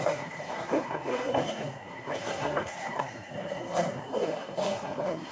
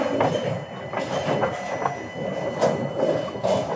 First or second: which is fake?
first